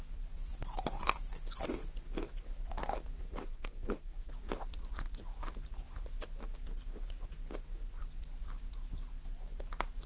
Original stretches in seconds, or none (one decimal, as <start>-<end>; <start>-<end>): 0.0-3.5; 4.3-10.1